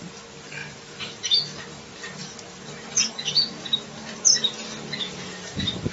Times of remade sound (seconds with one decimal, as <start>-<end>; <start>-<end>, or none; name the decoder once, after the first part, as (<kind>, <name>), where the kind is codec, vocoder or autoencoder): none